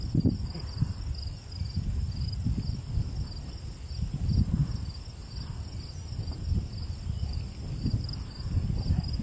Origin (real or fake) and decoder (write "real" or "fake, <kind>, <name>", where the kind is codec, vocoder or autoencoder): real